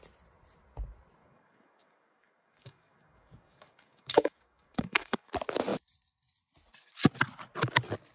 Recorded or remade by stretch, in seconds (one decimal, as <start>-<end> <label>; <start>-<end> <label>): 0.0-1.2 recorded; 1.2-5.3 remade; 5.3-8.1 recorded

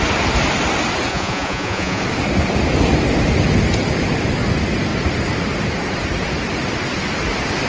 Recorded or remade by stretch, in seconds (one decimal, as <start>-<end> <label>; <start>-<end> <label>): 0.0-1.1 recorded; 1.1-2.0 remade; 2.0-7.7 recorded

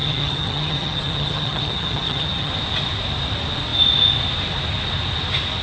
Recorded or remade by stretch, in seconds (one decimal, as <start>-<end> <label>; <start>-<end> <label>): 0.0-2.5 remade; 2.5-5.6 recorded

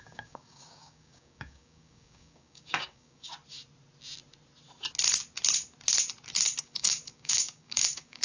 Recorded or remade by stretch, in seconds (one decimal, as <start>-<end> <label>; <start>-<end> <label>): 0.0-3.3 remade; 3.3-6.6 recorded; 6.6-8.2 remade

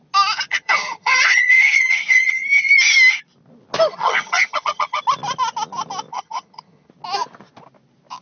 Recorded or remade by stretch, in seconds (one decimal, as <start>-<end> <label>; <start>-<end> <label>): 0.0-0.5 recorded; 0.5-2.6 remade; 2.6-3.9 recorded; 3.9-5.0 remade; 5.0-6.1 recorded; 6.1-6.9 remade; 6.9-8.2 recorded

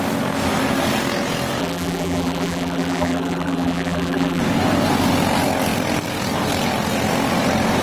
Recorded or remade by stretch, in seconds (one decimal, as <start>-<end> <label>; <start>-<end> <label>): 0.0-1.6 recorded; 1.6-4.4 remade; 4.4-7.8 recorded

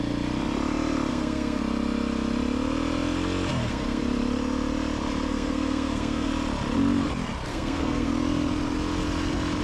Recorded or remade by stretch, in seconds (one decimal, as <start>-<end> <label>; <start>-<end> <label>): 0.0-1.1 recorded; 1.1-1.6 remade; 1.6-3.5 recorded; 3.5-4.0 remade; 4.0-5.3 recorded; 5.3-6.3 remade; 6.3-7.5 recorded; 7.5-8.1 remade; 8.1-9.6 recorded

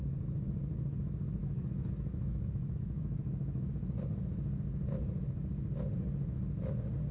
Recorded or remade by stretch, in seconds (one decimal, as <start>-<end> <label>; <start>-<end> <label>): 0.0-1.4 recorded; 1.4-3.7 remade; 3.7-7.1 recorded